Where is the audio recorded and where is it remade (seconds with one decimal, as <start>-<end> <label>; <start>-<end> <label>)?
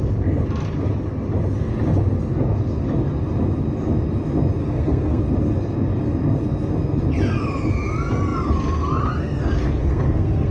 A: 0.0-4.6 recorded; 4.6-5.2 remade; 5.2-9.8 recorded; 9.8-10.5 remade